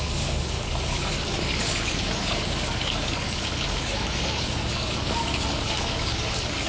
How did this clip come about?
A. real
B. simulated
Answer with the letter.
B